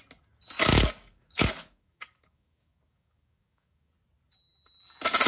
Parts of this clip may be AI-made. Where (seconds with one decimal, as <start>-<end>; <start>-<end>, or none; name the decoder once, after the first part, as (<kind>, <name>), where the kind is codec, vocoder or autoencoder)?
0.7-3.9 (codec, DAC)